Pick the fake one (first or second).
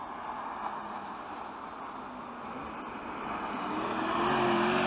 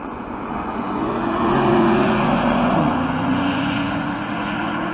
second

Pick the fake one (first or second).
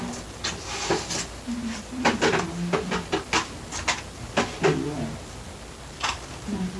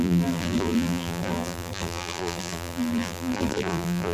second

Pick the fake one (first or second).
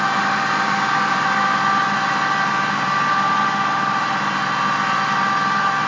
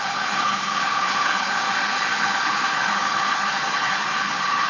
second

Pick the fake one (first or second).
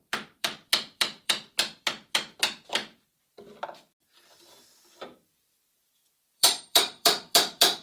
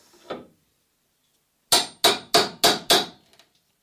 first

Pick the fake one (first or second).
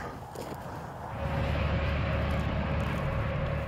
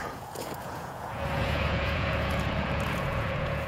second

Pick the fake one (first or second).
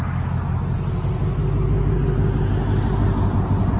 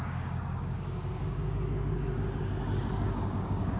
second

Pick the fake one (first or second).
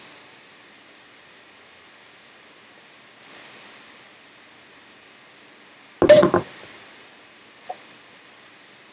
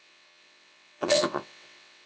second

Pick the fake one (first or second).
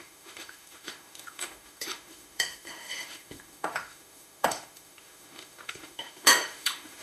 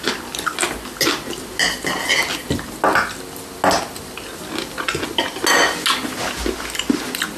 first